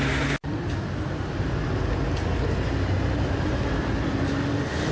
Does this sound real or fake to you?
real